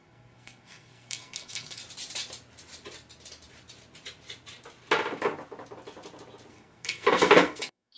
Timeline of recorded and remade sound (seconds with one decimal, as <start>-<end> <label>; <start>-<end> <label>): 0.0-1.8 remade; 1.8-6.5 recorded; 6.5-8.0 remade